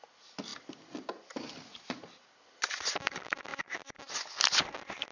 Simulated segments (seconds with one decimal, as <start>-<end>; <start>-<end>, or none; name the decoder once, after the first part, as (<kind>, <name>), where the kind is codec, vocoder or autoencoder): none